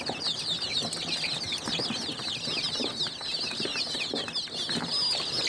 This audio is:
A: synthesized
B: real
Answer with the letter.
B